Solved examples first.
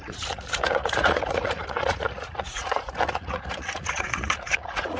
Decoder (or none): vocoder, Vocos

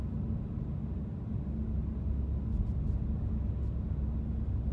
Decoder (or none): none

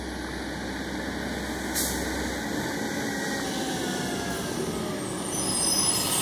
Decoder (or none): none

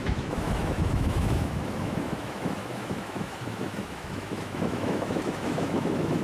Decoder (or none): autoencoder, DAC-VAE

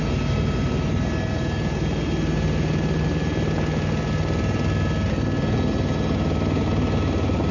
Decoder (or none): none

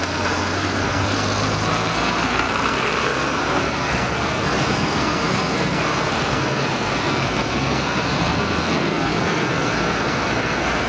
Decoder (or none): codec, SNAC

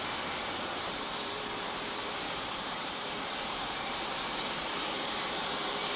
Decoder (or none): vocoder, BigVGAN v2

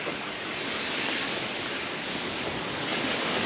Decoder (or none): codec, DAC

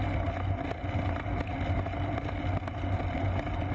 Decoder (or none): none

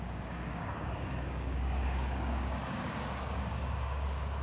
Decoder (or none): codec, DAC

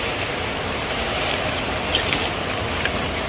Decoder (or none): none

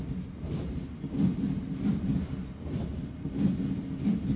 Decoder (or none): none